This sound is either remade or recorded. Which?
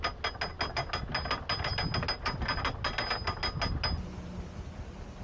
recorded